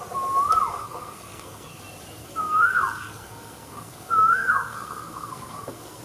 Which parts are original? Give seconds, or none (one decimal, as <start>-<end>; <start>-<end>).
0.0-0.7; 1.8-2.2